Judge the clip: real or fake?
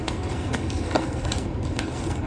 fake